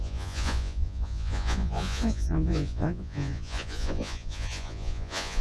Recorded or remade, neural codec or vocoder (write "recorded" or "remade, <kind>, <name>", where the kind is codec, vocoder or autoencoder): remade, vocoder, Vocos